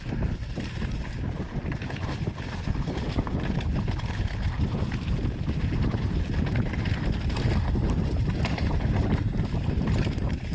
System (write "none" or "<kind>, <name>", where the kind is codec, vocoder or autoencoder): vocoder, BigVGAN v2